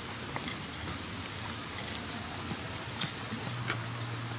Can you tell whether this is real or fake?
real